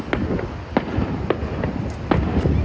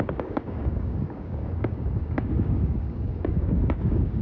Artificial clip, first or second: second